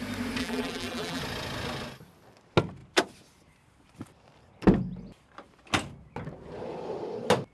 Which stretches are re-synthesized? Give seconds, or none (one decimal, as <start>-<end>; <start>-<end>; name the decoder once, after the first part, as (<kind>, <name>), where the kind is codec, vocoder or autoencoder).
0.4-1.2 (vocoder, BigVGAN v2)